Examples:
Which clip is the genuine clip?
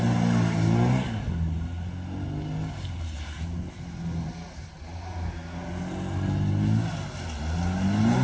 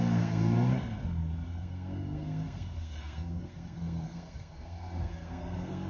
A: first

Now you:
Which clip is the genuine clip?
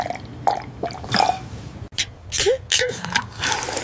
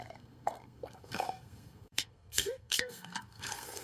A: first